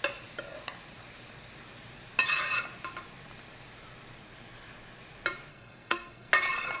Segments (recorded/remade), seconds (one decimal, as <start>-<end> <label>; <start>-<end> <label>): 0.0-5.5 recorded; 5.5-6.3 remade; 6.3-6.8 recorded